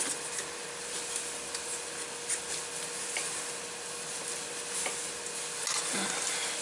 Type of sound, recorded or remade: recorded